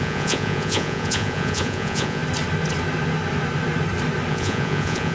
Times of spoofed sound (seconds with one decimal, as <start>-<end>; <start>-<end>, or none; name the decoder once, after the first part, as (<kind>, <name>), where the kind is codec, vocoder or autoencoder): 0.0-2.2 (vocoder, Vocos); 4.3-5.1

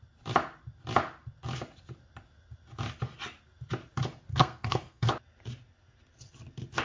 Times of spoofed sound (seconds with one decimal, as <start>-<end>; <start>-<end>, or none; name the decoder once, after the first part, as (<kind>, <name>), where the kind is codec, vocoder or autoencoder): 4.3-5.1 (codec, SNAC)